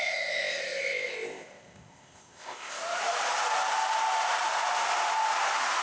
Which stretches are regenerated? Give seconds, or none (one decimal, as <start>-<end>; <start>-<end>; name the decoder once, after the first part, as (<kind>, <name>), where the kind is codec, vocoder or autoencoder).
0.0-2.8 (codec, ZipCodec)